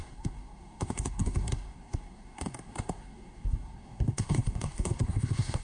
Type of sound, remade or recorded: remade